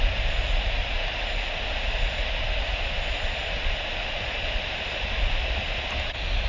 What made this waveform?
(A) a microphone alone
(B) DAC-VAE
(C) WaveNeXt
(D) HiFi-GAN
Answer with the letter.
A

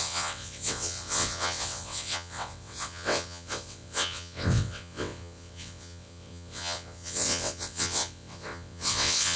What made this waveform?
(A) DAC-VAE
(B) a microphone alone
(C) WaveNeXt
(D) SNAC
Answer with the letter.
C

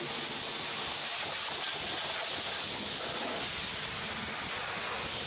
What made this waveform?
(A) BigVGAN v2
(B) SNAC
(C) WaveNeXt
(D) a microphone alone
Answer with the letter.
D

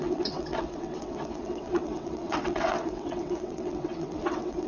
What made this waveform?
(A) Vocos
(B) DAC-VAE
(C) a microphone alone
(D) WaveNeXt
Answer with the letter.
D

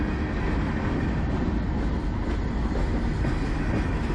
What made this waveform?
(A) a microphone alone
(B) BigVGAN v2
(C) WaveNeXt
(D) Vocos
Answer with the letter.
A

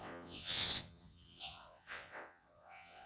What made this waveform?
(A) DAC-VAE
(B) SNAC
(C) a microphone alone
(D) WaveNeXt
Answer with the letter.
D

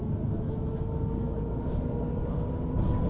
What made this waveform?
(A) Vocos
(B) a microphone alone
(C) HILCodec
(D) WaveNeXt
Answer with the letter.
B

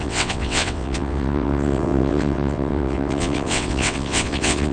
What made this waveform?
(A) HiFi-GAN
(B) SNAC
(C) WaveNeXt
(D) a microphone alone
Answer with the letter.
C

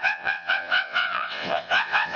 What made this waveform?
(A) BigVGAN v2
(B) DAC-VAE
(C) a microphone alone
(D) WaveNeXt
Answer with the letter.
D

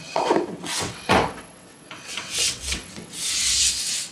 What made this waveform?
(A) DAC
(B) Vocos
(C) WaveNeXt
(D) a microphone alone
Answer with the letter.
C